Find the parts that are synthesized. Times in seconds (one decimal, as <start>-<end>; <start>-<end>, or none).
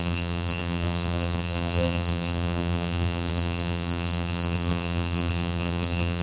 0.0-6.2